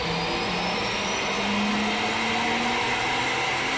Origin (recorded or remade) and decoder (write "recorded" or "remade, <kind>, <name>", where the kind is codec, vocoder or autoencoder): recorded